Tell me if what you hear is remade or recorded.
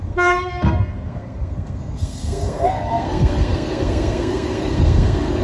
remade